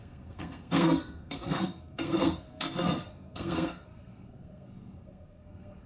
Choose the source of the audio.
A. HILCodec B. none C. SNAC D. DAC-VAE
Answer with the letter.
C